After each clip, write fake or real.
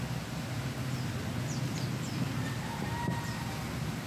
real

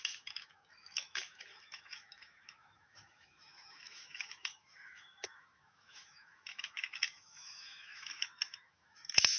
fake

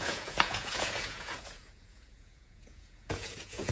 fake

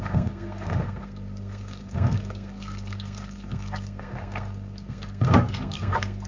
fake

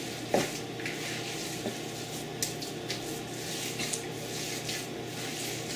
real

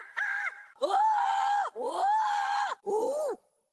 real